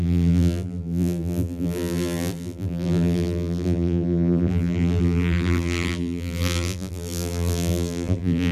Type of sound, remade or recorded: remade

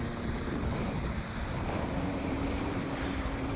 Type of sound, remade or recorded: remade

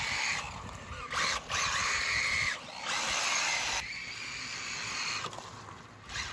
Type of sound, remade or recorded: recorded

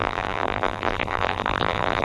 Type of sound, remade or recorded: remade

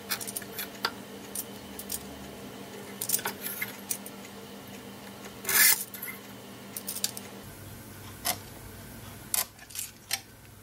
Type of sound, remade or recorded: recorded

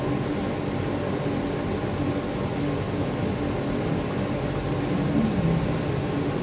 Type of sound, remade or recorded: recorded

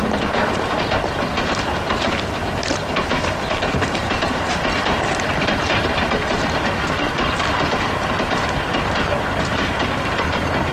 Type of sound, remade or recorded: recorded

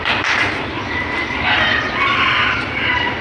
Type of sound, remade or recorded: remade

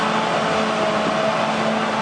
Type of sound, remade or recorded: recorded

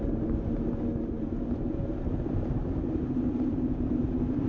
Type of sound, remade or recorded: remade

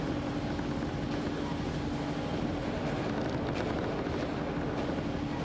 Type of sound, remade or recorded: recorded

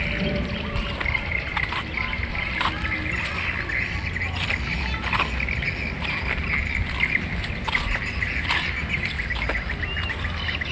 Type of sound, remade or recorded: recorded